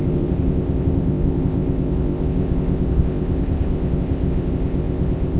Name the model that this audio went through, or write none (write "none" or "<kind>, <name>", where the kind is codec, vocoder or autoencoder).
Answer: codec, ZipCodec